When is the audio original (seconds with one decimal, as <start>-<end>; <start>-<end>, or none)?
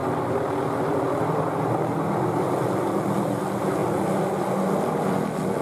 0.0-5.6